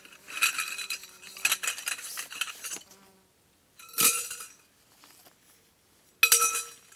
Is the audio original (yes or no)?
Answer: yes